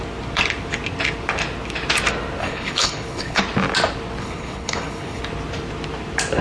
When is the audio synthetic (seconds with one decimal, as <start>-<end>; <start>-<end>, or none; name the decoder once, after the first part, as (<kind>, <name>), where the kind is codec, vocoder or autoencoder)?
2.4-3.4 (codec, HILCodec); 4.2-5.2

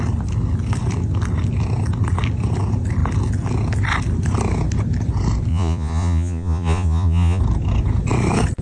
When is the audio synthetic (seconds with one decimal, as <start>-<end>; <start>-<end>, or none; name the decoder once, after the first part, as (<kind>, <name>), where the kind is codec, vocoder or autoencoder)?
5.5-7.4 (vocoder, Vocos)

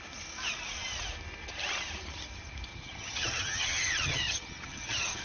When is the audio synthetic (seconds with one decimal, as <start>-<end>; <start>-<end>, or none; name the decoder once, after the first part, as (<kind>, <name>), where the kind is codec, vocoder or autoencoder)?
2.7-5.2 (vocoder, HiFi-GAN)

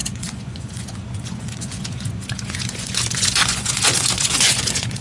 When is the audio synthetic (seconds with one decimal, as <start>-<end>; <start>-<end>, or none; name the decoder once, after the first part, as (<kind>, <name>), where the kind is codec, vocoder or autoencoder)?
0.0-5.0 (vocoder, Vocos)

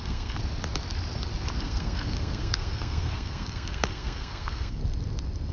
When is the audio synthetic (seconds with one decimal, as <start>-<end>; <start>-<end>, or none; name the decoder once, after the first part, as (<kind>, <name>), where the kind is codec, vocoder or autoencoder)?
0.0-0.4 (codec, SNAC); 1.6-4.8

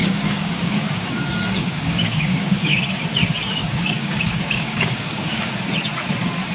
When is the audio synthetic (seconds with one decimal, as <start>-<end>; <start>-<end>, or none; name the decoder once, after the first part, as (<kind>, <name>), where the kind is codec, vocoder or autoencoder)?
0.0-2.8 (codec, DAC); 3.6-5.5

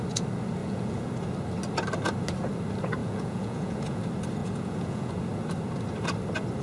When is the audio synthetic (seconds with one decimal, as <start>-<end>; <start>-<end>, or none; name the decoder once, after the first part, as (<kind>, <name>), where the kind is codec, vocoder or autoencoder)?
0.6-1.1 (vocoder, Vocos); 3.0-4.0; 4.4-5.1

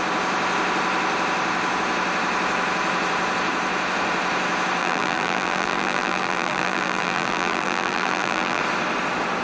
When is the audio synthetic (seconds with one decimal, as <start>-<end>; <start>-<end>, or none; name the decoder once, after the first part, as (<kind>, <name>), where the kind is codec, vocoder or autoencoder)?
4.8-8.6 (vocoder, BigVGAN v2)